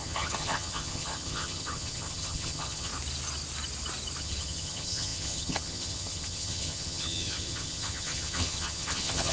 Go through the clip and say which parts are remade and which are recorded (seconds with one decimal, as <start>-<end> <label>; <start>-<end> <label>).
0.0-2.9 remade; 2.9-4.2 recorded; 4.2-9.3 remade